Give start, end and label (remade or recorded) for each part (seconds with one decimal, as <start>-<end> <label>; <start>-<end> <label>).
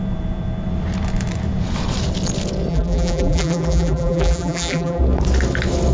0.0-2.7 recorded; 2.7-5.0 remade; 5.0-5.9 recorded